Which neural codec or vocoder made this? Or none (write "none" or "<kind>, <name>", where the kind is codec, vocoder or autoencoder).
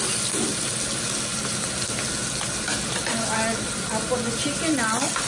none